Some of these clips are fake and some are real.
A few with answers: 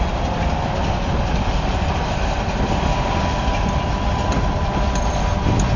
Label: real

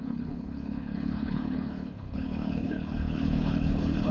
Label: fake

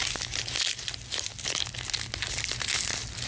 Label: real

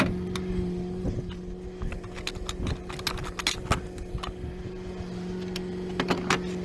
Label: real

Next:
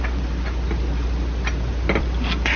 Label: real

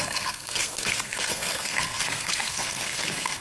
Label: fake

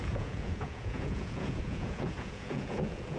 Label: fake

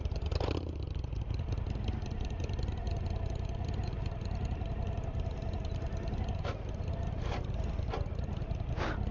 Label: real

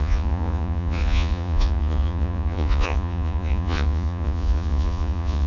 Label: fake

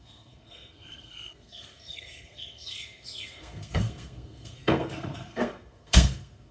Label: fake